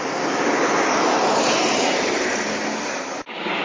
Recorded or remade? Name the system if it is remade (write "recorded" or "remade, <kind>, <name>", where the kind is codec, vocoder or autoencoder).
recorded